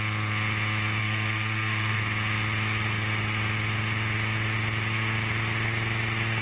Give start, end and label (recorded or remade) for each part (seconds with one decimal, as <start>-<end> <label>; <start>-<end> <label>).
0.0-1.0 recorded; 1.0-2.0 remade; 2.0-6.4 recorded